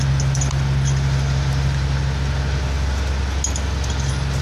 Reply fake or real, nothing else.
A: real